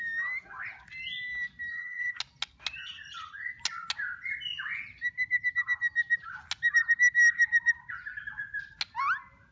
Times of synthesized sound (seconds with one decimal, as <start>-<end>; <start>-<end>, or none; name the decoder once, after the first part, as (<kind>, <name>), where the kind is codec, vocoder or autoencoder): 1.7-2.2 (vocoder, HiFi-GAN); 2.8-3.5